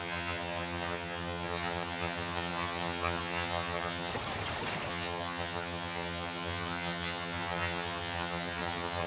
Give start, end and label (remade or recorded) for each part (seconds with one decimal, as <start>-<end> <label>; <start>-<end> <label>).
0.0-4.1 remade; 4.1-4.9 recorded; 4.9-9.1 remade